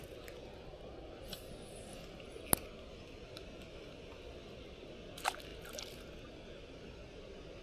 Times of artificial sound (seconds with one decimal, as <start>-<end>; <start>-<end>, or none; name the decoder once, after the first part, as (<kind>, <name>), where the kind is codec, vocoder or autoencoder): none